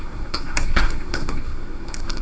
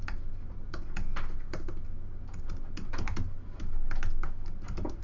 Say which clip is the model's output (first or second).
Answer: first